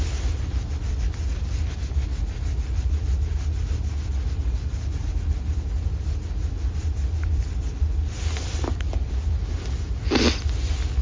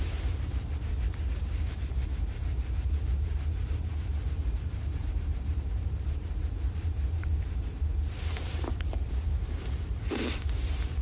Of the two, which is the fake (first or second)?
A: second